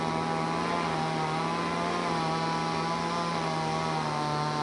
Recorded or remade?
recorded